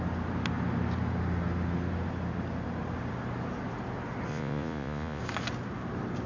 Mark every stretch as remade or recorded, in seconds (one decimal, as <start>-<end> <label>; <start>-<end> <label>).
0.0-4.3 recorded; 4.3-5.2 remade; 5.2-6.3 recorded